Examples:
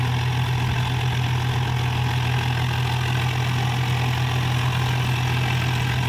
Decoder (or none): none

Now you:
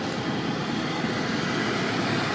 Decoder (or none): none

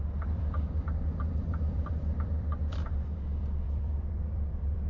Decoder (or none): vocoder, BigVGAN v2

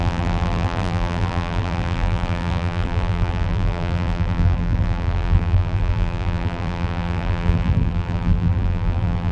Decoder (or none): vocoder, BigVGAN v2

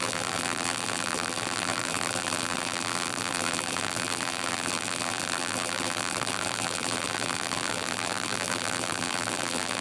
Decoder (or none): vocoder, BigVGAN v2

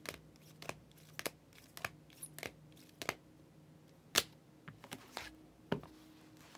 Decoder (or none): none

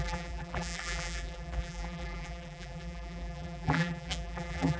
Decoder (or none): vocoder, BigVGAN v2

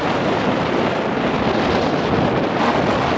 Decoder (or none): none